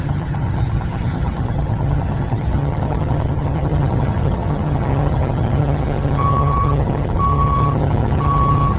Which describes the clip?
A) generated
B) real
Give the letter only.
A